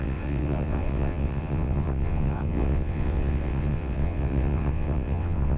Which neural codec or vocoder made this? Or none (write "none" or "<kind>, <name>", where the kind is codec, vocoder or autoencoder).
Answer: vocoder, WaveNeXt